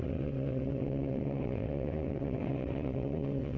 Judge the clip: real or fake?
fake